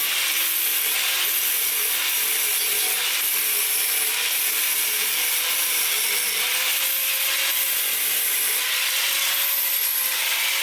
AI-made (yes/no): no